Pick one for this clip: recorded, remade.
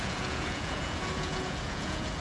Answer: remade